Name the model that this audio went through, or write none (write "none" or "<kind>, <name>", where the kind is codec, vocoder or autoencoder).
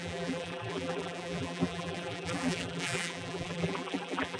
vocoder, BigVGAN v2